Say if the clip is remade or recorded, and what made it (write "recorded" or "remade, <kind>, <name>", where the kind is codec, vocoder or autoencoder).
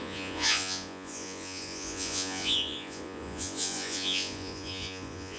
remade, vocoder, Vocos